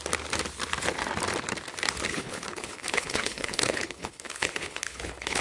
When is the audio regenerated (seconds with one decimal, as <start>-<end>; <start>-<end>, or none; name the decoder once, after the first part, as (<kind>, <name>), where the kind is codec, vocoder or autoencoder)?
2.1-5.4 (codec, HILCodec)